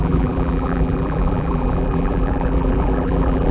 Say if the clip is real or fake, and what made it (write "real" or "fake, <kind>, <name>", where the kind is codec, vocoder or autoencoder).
fake, vocoder, BigVGAN v2